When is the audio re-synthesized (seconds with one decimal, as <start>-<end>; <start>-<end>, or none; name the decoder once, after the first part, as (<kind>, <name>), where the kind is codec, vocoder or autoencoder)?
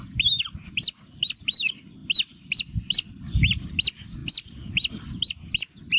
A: none